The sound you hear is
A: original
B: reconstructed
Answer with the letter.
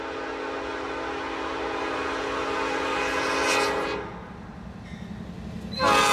A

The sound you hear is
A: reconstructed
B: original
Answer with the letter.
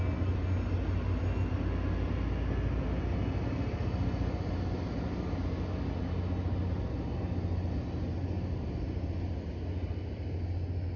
B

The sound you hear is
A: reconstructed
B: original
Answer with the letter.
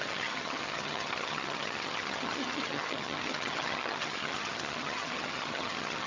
A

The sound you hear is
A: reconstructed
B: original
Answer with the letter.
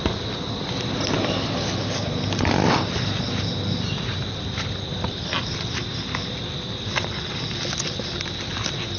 B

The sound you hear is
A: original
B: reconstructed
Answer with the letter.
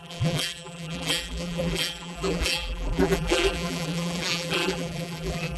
B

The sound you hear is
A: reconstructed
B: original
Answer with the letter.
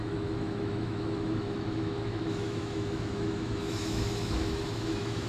A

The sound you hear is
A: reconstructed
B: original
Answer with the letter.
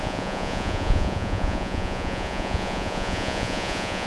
A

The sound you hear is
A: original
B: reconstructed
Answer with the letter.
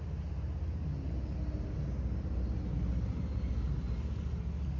A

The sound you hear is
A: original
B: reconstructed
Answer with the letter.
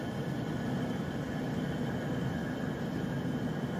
A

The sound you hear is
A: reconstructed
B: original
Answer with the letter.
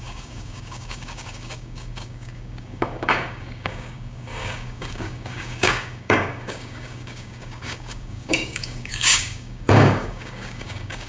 A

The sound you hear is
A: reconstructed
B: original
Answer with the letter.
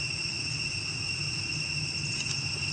B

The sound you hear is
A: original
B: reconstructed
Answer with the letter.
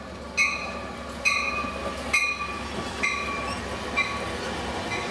A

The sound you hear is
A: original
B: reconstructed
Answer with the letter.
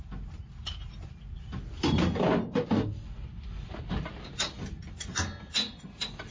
A